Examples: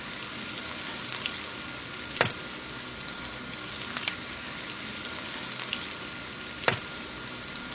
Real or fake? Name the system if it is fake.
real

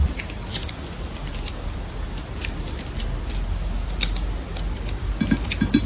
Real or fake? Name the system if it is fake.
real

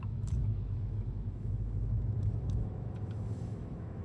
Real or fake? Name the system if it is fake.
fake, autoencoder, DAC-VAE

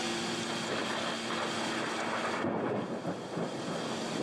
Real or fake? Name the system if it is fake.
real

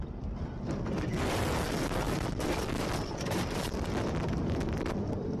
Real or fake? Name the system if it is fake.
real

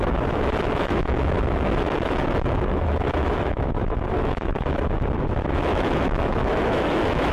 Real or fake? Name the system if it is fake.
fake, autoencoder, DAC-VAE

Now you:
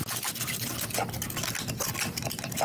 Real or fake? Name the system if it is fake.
real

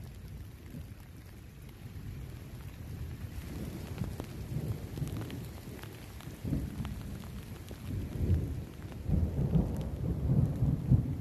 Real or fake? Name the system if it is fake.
fake, vocoder, BigVGAN v2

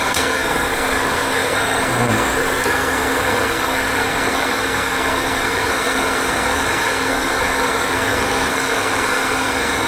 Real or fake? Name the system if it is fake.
fake, codec, SNAC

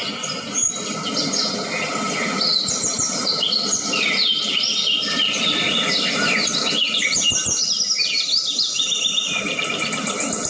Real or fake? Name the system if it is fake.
real